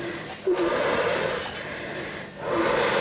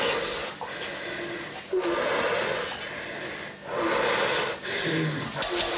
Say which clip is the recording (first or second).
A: second